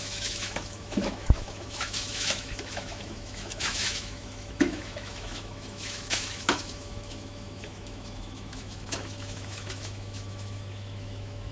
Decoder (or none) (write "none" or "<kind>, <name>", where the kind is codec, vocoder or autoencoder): autoencoder, DAC-VAE